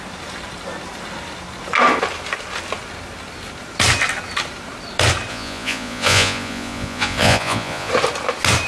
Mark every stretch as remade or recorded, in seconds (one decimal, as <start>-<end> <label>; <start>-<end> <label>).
0.0-5.3 recorded; 5.3-7.9 remade; 7.9-8.7 recorded